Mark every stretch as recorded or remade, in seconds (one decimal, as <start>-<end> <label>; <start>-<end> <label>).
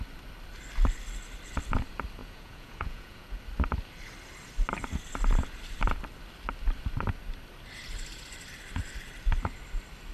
0.0-2.2 recorded; 2.2-3.4 remade; 3.4-10.1 recorded